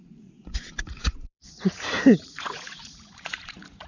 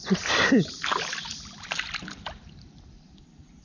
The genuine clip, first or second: second